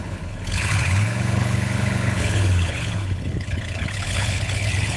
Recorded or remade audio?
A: remade